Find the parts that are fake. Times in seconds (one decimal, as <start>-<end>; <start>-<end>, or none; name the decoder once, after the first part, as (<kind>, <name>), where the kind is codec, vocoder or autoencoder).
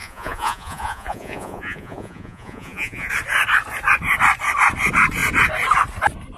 0.0-3.1 (vocoder, Vocos)